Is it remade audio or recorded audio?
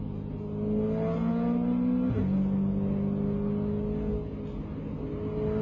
recorded